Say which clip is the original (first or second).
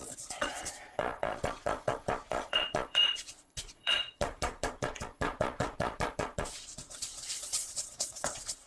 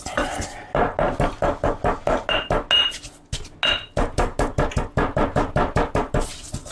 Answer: second